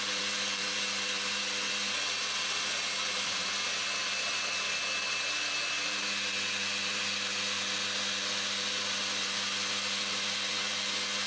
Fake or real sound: fake